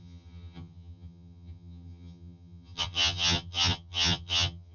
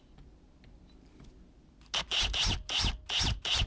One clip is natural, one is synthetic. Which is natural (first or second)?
second